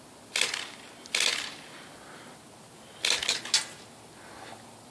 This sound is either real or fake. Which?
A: real